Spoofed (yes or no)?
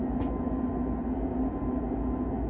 no